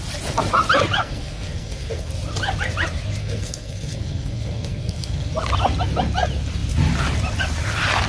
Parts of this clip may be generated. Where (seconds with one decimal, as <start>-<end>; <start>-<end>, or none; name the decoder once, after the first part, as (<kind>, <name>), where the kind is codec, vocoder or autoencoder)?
1.0-2.1 (codec, SNAC); 3.2-5.3